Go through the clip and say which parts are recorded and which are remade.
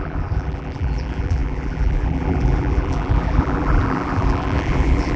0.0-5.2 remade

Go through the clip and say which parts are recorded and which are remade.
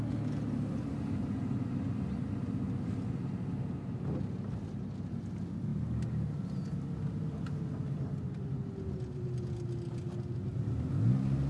0.0-11.5 recorded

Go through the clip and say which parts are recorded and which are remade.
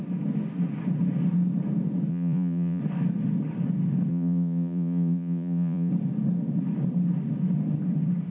0.0-2.1 recorded; 2.1-2.8 remade; 2.8-4.1 recorded; 4.1-5.9 remade; 5.9-8.3 recorded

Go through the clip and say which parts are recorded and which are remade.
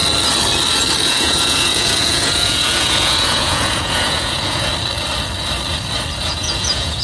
0.0-1.0 recorded; 1.0-4.7 remade; 4.7-6.2 recorded; 6.2-7.0 remade